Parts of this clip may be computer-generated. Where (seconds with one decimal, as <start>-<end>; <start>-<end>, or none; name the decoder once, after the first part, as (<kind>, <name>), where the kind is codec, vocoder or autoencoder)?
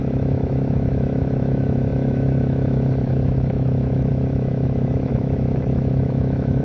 0.0-6.6 (autoencoder, DAC-VAE)